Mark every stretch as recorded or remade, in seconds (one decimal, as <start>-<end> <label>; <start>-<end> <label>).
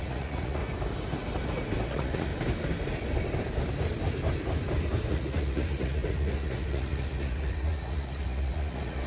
0.0-0.6 remade; 0.6-1.9 recorded; 1.9-2.3 remade; 2.3-5.1 recorded; 5.1-9.1 remade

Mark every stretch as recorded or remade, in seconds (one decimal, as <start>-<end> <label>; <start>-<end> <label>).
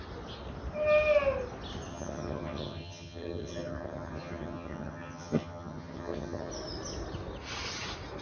0.0-1.9 recorded; 1.9-6.5 remade; 6.5-8.2 recorded